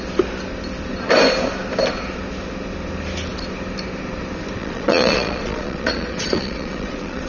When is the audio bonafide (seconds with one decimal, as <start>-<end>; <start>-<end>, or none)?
0.0-4.6